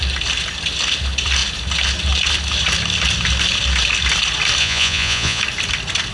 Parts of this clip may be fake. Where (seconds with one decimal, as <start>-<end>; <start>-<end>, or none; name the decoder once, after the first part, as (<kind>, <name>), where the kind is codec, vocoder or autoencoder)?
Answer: 4.6-5.4 (vocoder, Vocos)